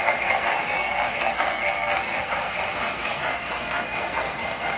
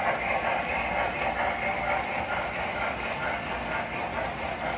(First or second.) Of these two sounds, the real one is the second